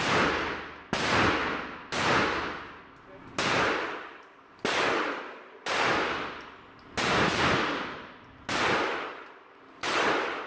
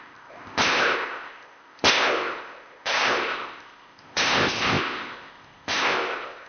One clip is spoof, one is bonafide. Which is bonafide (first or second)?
first